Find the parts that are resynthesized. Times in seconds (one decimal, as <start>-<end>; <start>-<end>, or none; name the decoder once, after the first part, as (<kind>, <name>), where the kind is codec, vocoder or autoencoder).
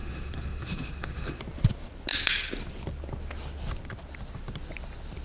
0.0-1.4 (codec, SNAC)